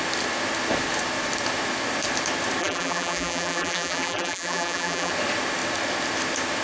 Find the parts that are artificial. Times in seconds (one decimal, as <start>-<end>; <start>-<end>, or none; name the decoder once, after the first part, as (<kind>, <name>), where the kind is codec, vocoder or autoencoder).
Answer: 2.6-5.1 (vocoder, BigVGAN v2)